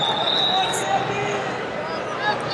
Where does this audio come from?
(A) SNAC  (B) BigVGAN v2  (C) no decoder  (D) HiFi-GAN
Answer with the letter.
C